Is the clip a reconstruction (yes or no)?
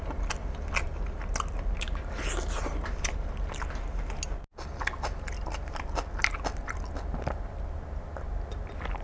no